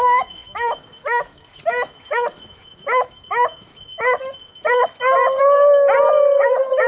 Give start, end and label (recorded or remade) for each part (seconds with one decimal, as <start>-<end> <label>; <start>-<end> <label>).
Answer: 0.0-4.8 remade; 4.8-6.3 recorded; 6.3-6.9 remade